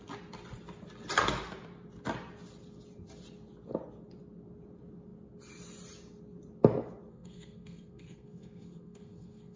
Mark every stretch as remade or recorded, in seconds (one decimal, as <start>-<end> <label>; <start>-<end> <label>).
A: 0.0-7.1 recorded; 7.1-9.6 remade